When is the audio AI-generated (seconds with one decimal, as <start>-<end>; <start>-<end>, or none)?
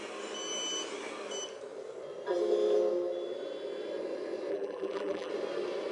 4.5-5.3